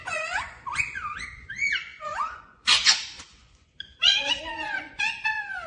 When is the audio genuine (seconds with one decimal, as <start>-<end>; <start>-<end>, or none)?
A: none